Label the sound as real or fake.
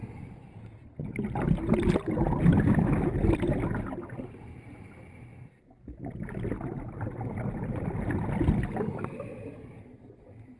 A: real